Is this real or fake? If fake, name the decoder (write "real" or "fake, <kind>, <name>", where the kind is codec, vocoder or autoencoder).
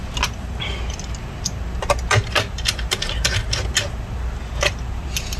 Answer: real